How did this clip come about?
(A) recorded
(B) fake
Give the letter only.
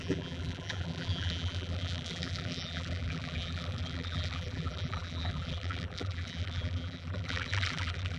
B